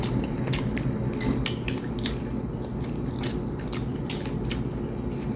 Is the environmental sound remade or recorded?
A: recorded